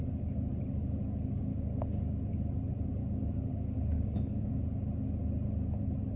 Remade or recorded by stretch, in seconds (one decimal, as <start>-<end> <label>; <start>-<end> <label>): 0.0-1.5 recorded; 1.5-2.2 remade; 2.2-3.0 recorded; 3.0-4.5 remade; 4.5-6.2 recorded

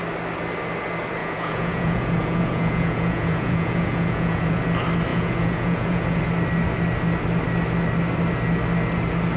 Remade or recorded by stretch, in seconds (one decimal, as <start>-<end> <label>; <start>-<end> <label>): 0.0-1.2 recorded; 1.2-4.6 remade; 4.6-5.1 recorded; 5.1-6.2 remade; 6.2-9.4 recorded

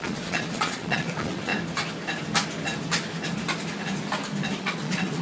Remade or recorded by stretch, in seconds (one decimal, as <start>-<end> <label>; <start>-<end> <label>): 0.0-1.5 remade; 1.5-4.6 recorded; 4.6-5.2 remade

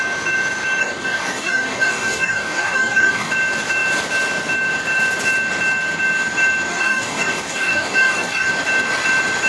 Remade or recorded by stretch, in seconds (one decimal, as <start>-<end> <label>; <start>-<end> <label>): 0.0-0.8 recorded; 0.8-3.3 remade; 3.3-6.7 recorded; 6.7-8.5 remade; 8.5-9.5 recorded

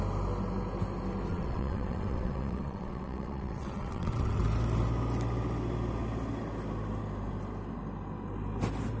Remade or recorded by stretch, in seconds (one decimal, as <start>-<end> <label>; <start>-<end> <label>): 0.0-1.3 recorded; 1.3-4.4 remade; 4.4-9.0 recorded

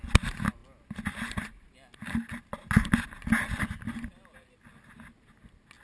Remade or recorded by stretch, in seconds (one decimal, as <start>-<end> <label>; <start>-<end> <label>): 0.0-5.8 recorded

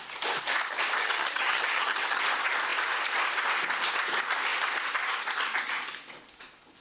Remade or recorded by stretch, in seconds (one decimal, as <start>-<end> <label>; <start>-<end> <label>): 0.0-1.0 recorded; 1.0-2.2 remade; 2.2-6.8 recorded

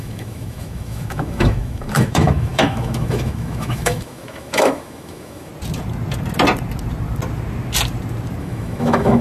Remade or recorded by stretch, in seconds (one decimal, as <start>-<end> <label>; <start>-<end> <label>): 0.0-5.5 remade; 5.5-8.4 recorded; 8.4-9.2 remade